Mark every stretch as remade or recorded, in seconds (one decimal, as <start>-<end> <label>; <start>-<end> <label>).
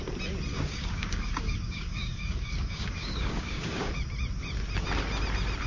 0.0-0.5 recorded; 0.5-3.9 remade; 3.9-5.7 recorded